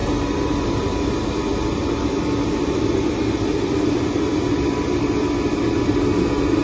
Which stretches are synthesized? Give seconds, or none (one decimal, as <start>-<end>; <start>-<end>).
none